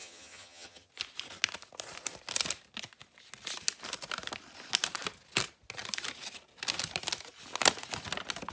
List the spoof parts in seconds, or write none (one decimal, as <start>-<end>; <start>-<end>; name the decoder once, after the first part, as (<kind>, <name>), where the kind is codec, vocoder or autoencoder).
0.0-0.9 (vocoder, HiFi-GAN)

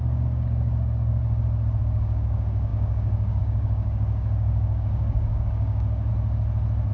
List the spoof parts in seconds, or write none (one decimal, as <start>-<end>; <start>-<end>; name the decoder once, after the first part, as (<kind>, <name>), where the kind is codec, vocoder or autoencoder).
0.0-1.2 (codec, DAC); 1.8-6.1

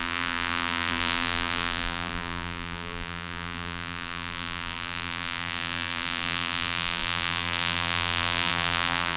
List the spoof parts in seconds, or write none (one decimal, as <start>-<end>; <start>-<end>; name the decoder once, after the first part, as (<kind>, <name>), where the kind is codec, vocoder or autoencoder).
0.0-9.2 (vocoder, BigVGAN v2)

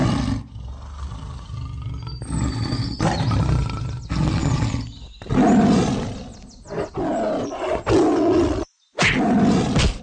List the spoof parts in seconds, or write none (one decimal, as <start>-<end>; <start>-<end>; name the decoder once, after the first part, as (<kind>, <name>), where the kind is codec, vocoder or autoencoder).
none

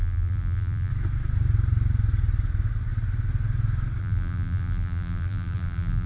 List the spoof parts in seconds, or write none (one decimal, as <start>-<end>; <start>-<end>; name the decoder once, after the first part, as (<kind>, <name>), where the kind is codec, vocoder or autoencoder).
0.0-0.9 (vocoder, BigVGAN v2); 4.0-6.1